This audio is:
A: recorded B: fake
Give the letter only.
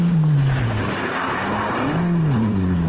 B